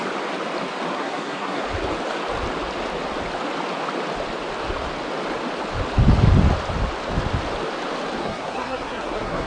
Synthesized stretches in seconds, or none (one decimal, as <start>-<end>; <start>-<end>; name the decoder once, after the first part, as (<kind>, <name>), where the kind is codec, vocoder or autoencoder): 0.9-1.6 (codec, SNAC); 8.2-9.5